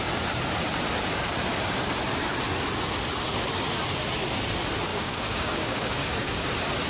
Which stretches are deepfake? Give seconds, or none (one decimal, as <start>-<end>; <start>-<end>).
4.9-6.5